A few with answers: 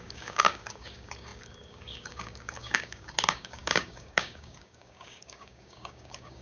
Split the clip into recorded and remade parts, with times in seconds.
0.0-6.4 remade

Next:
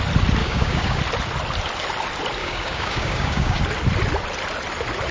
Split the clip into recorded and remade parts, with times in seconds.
0.0-0.4 recorded; 0.4-1.0 remade; 1.0-2.4 recorded; 2.4-3.6 remade; 3.6-5.1 recorded

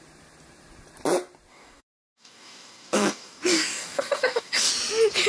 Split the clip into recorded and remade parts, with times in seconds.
0.0-1.5 recorded; 1.5-4.7 remade; 4.7-5.3 recorded